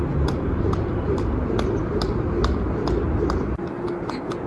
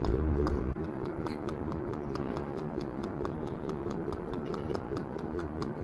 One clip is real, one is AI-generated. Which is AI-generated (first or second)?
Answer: second